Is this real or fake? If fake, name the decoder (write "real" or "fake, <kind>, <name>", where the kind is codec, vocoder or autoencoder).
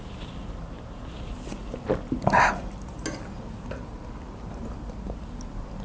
real